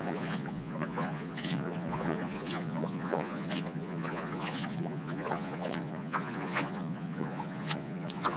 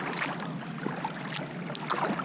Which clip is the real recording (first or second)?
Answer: second